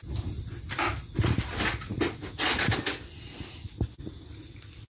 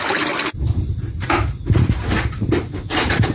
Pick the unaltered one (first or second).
first